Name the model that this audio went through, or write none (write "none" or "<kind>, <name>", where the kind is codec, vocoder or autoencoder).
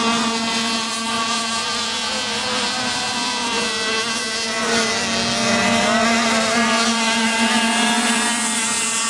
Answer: none